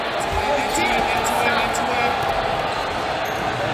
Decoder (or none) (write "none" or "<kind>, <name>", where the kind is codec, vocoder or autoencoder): none